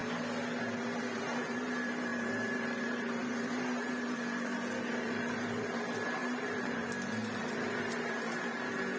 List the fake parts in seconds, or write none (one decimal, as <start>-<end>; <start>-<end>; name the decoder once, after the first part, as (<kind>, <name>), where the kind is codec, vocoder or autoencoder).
1.0-9.0 (vocoder, BigVGAN v2)